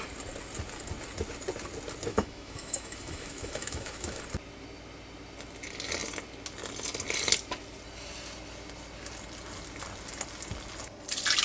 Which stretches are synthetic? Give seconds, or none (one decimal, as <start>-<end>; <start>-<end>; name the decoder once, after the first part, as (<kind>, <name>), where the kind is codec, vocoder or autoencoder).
2.1-4.2 (autoencoder, DAC-VAE)